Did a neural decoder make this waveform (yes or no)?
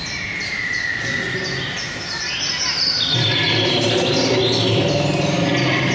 no